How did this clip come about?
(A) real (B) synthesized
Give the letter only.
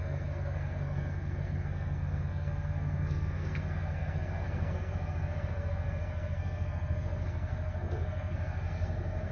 B